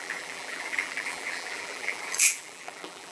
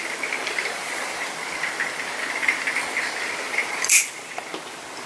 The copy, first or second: first